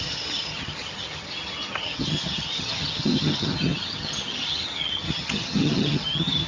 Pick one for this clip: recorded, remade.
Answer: remade